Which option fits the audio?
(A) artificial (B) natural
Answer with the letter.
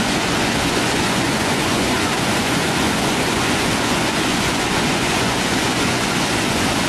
A